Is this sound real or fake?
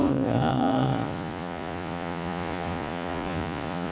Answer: fake